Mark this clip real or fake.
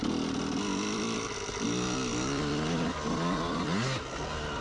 real